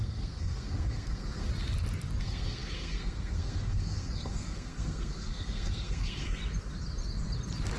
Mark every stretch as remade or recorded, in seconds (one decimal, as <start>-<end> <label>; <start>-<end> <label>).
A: 0.0-1.5 remade; 1.5-2.2 recorded; 2.2-6.4 remade; 6.4-7.8 recorded